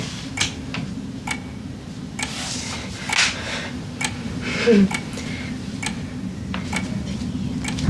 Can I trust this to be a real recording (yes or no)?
yes